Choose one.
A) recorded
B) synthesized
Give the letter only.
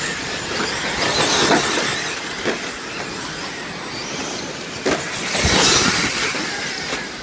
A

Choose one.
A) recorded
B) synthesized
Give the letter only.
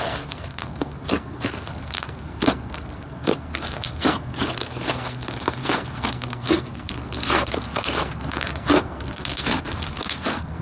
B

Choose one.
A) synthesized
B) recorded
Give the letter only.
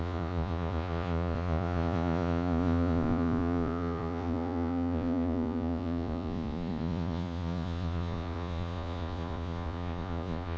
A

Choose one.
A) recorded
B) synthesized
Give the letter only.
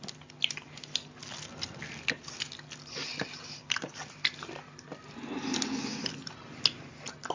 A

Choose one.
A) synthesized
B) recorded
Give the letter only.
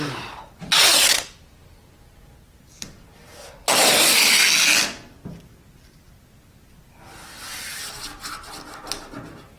B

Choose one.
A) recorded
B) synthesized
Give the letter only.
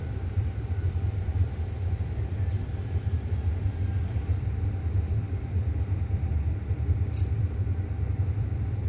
B